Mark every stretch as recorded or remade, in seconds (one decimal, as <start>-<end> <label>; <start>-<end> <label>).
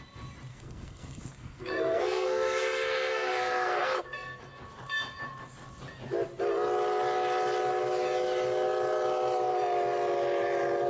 0.0-0.5 recorded; 0.5-4.4 remade; 4.4-10.9 recorded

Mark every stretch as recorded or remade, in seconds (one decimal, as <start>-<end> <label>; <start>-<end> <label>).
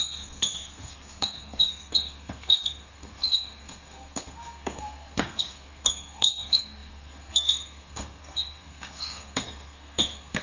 0.0-10.4 remade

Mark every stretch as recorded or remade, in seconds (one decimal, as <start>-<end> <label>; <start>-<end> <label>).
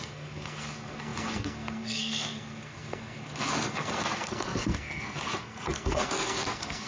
0.0-6.9 remade